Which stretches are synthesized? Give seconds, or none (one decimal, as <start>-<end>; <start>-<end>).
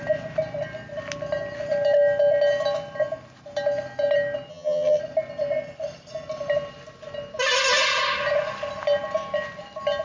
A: 4.5-5.0